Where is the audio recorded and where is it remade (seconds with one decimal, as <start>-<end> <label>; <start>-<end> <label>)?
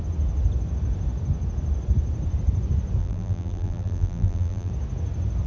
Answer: 0.0-3.0 recorded; 3.0-4.7 remade; 4.7-5.5 recorded